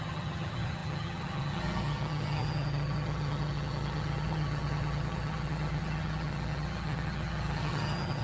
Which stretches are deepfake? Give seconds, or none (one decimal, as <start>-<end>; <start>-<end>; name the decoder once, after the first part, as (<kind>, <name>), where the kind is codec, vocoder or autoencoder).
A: 0.0-8.2 (vocoder, HiFi-GAN)

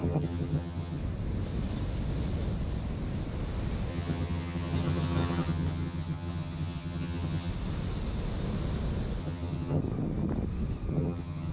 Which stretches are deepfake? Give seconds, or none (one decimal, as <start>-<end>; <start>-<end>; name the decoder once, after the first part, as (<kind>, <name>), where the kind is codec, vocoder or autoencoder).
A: 0.0-1.0 (vocoder, HiFi-GAN); 3.9-7.5; 9.2-9.8; 10.9-11.5

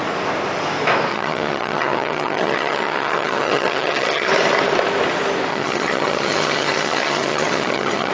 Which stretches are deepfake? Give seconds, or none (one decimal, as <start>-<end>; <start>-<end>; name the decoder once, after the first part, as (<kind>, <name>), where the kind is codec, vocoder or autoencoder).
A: 1.1-4.3 (vocoder, HiFi-GAN); 5.5-8.1

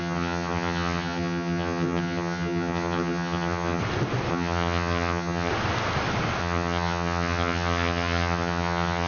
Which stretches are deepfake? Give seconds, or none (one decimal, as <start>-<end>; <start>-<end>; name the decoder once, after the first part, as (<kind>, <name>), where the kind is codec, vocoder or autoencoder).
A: 0.0-3.8 (vocoder, HiFi-GAN); 4.3-5.5; 6.4-9.1

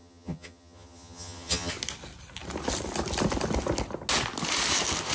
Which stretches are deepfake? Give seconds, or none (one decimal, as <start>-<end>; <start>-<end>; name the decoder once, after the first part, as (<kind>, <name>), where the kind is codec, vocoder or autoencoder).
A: 0.0-1.7 (vocoder, HiFi-GAN)

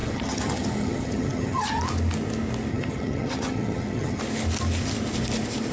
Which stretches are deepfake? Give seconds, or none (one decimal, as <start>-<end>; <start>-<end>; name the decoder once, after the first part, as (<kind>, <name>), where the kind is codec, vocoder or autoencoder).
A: 0.0-1.8 (vocoder, HiFi-GAN); 2.7-4.2